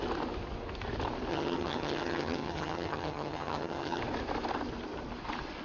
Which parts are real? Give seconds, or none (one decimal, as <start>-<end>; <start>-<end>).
0.0-1.3; 4.0-5.6